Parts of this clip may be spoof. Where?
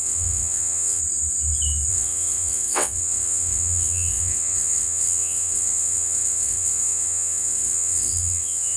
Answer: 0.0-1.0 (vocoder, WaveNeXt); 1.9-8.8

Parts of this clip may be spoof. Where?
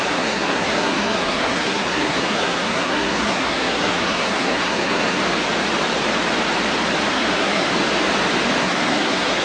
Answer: 0.0-5.2 (codec, SNAC); 7.1-7.7; 8.6-9.4